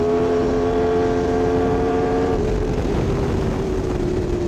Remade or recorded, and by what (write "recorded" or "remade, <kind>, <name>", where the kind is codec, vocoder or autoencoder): remade, vocoder, BigVGAN v2